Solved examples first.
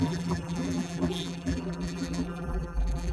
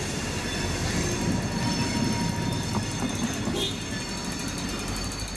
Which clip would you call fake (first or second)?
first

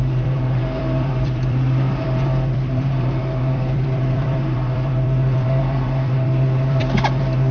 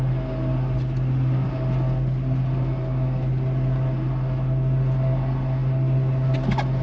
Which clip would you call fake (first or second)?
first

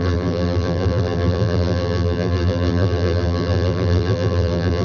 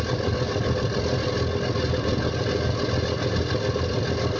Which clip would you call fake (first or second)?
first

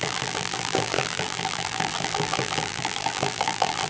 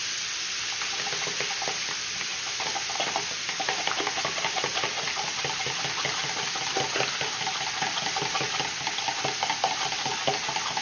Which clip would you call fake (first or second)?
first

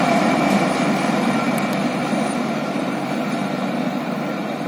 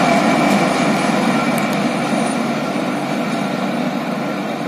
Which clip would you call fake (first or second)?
first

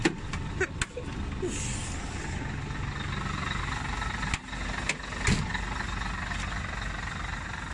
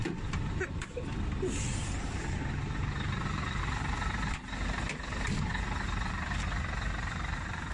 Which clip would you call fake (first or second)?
second